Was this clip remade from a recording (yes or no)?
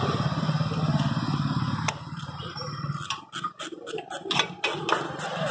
no